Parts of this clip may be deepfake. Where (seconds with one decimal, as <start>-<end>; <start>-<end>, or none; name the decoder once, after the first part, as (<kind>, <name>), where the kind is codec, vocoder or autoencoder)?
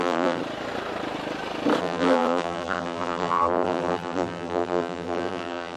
0.0-0.4 (vocoder, BigVGAN v2); 1.8-5.8